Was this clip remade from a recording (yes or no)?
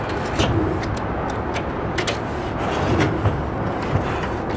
no